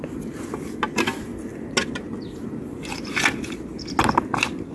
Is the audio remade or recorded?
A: recorded